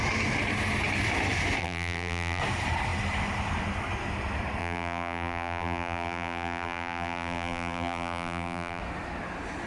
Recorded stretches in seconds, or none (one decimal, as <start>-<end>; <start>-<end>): 0.0-1.6; 2.4-4.6; 8.8-9.7